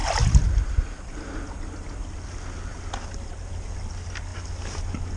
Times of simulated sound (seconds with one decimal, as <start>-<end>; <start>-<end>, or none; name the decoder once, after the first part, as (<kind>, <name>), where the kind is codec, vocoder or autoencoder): none

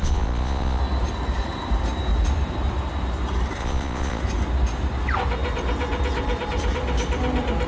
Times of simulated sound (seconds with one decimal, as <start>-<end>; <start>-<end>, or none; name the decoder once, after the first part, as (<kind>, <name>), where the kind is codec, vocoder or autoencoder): 0.0-0.8 (vocoder, Vocos); 3.6-4.2